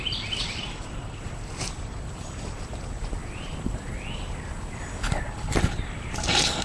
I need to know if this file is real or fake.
real